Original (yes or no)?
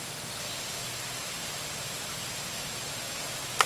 yes